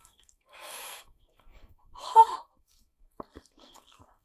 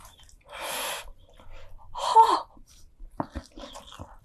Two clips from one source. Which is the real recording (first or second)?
second